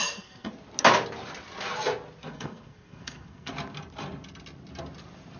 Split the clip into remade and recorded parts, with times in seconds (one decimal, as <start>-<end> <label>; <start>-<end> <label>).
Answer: 0.0-0.5 remade; 0.5-2.3 recorded; 2.3-3.5 remade; 3.5-5.4 recorded

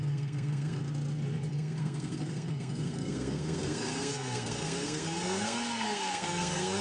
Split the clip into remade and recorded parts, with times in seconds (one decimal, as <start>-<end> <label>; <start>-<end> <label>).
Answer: 0.0-0.8 remade; 0.8-1.5 recorded; 1.5-6.8 remade

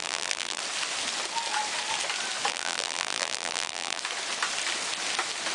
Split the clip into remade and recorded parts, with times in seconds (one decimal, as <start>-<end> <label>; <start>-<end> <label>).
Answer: 0.0-0.6 remade; 0.6-2.5 recorded; 2.5-4.0 remade; 4.0-5.5 recorded

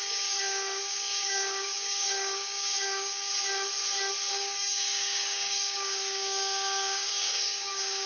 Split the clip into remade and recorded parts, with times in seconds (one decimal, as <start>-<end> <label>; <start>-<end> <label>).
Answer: 0.0-3.3 remade; 3.3-4.3 recorded; 4.3-8.1 remade

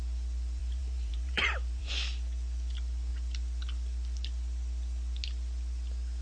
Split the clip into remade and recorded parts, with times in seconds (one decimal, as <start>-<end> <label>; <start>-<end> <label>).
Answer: 0.0-0.6 recorded; 0.6-1.9 remade; 1.9-6.2 recorded